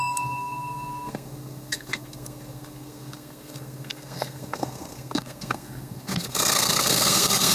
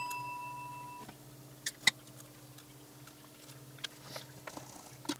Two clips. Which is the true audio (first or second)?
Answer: second